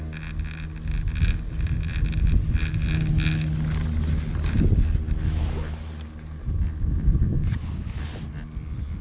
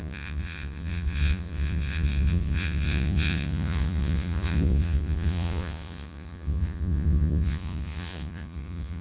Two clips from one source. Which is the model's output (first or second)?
second